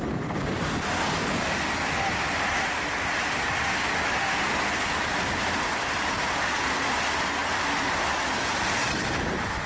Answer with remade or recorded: recorded